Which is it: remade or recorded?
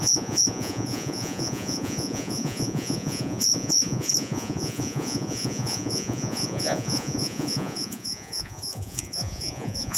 remade